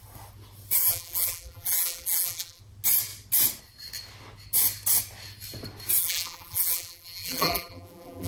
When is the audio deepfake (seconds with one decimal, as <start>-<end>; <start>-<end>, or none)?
0.8-2.6; 6.0-8.3